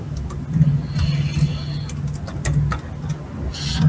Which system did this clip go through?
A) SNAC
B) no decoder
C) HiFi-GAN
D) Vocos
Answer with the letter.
B